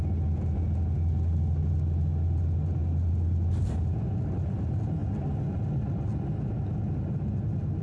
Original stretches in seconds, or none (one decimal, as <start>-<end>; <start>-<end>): 0.0-7.8